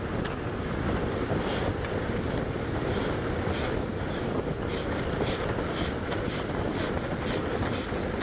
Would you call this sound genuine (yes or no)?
yes